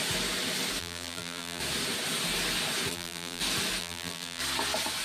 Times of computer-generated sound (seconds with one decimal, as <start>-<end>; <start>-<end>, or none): 0.8-1.6; 2.9-3.4; 3.8-4.4